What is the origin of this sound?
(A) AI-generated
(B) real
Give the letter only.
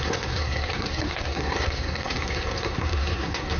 A